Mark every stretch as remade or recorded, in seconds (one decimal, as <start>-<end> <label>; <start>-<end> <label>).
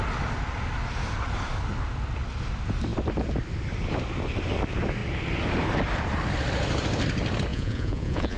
0.0-7.5 recorded; 7.5-8.4 remade